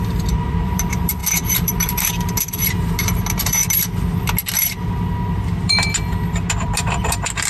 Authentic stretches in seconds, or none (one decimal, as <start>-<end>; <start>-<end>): 3.6-6.5